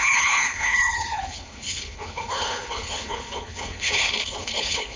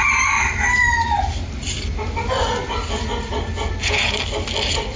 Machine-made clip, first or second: first